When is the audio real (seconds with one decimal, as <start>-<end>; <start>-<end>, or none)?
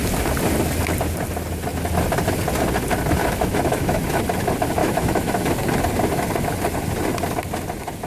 0.0-3.2; 4.2-4.8; 5.5-8.1